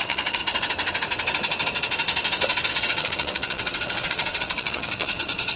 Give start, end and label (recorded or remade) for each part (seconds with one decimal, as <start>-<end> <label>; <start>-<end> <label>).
0.0-0.4 remade; 0.4-2.7 recorded; 2.7-5.6 remade